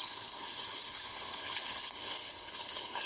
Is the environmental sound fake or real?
fake